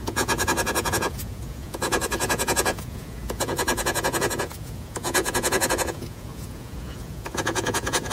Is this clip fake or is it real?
fake